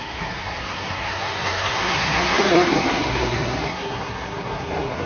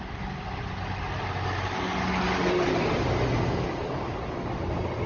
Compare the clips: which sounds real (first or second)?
second